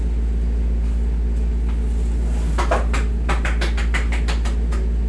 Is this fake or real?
real